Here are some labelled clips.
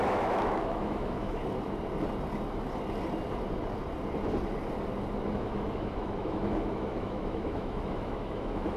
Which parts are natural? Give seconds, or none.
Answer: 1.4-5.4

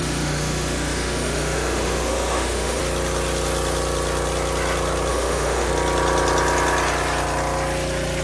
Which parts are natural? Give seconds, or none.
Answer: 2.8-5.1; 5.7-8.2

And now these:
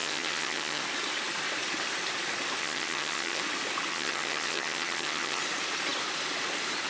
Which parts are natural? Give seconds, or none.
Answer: 0.8-2.6; 3.4-3.9; 5.4-6.9

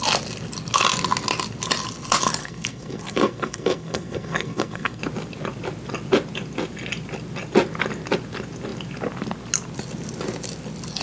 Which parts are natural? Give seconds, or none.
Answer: 0.0-2.4; 5.0-11.0

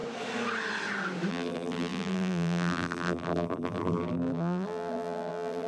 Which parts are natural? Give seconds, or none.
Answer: 0.0-1.3

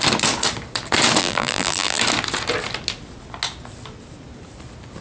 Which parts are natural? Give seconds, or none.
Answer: 0.0-1.2; 2.0-5.0